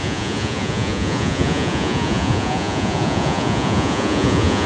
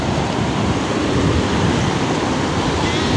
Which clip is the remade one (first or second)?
first